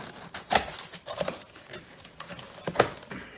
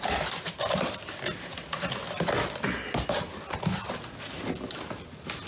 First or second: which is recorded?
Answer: second